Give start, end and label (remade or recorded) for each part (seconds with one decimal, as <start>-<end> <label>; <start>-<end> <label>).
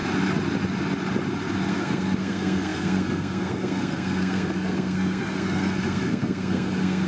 0.0-1.7 recorded; 1.7-7.1 remade